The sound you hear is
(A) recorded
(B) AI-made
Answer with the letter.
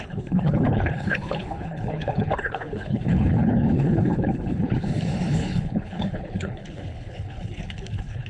B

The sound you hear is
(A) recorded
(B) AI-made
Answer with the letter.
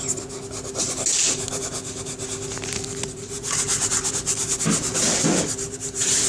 A